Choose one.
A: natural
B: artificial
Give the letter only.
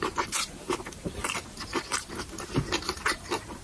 B